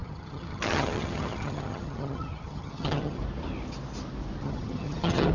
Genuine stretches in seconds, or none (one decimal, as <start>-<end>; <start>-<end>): 3.2-4.4